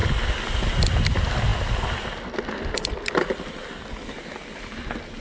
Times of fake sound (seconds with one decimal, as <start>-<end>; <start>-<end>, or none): none